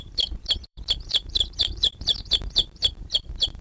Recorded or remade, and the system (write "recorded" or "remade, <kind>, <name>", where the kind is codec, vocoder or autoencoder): remade, vocoder, BigVGAN v2